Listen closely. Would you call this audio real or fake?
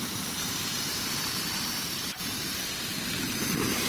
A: fake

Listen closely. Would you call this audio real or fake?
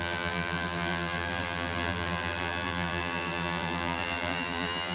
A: fake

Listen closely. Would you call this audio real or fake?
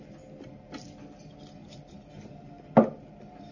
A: real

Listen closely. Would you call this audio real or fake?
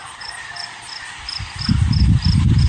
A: fake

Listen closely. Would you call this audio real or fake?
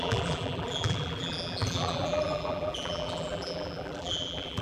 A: fake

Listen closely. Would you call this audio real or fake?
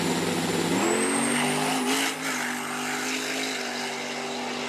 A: real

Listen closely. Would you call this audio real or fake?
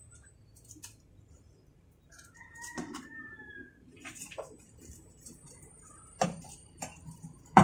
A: fake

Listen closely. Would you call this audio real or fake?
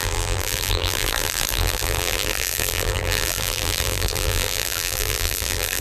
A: fake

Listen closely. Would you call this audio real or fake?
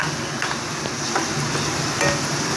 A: real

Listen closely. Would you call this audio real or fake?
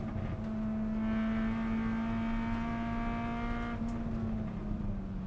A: real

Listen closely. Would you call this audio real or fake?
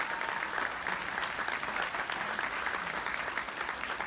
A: real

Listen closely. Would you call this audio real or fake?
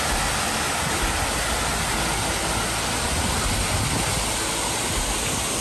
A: real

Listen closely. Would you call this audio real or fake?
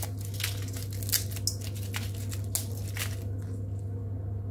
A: real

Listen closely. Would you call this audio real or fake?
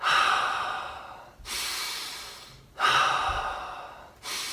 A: real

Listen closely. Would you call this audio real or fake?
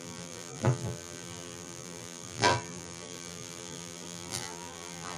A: fake